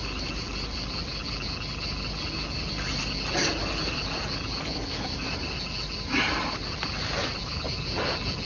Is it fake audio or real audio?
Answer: real